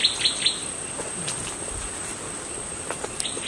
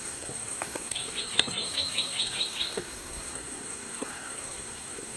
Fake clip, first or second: second